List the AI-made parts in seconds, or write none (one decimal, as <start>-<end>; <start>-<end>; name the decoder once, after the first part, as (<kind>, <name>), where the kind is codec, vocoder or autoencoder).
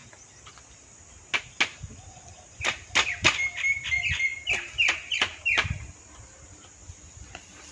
none